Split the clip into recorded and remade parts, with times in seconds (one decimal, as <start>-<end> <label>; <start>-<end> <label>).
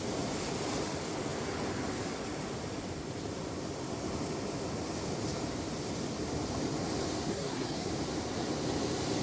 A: 0.0-7.3 recorded; 7.3-7.9 remade; 7.9-9.2 recorded